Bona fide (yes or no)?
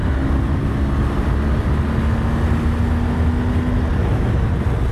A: yes